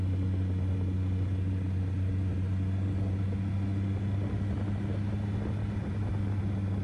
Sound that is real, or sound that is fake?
real